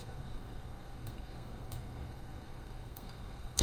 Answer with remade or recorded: remade